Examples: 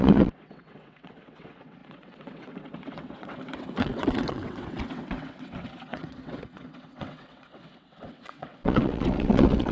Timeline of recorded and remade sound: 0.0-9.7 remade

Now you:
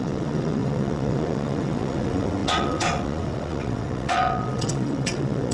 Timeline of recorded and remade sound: 0.0-5.5 remade